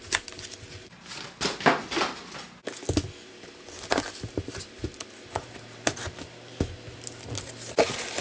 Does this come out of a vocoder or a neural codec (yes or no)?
no